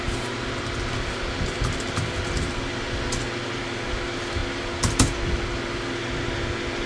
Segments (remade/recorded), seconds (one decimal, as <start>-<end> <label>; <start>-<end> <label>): 0.0-6.9 recorded